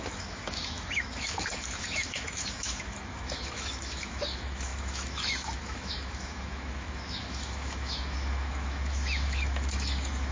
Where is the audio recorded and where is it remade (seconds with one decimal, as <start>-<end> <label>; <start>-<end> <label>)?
0.0-10.3 remade